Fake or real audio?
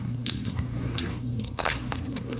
fake